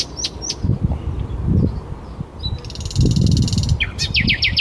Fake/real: real